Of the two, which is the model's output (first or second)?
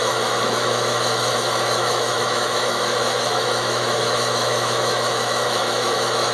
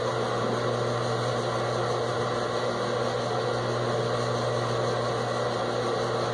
first